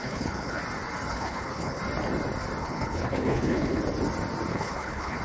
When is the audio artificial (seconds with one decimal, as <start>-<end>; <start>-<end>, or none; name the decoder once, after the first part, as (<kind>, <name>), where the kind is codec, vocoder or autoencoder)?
0.0-0.6 (codec, HILCodec); 1.1-1.8; 2.6-3.8; 4.5-5.2